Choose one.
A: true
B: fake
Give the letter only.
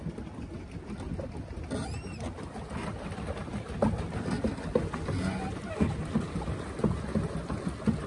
A